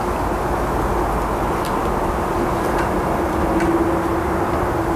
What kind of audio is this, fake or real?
real